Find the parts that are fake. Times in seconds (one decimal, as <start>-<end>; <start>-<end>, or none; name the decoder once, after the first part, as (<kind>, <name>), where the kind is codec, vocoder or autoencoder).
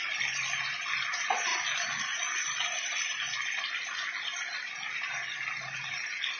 none